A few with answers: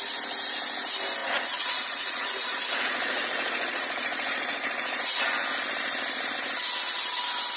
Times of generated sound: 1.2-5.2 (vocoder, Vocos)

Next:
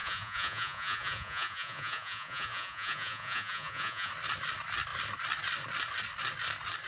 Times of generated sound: 0.0-4.1 (vocoder, Vocos)